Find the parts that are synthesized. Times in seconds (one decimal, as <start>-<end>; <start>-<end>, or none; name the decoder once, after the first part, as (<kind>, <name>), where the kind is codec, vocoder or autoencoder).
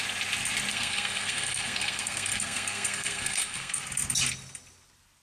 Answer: 0.7-3.8 (codec, SNAC)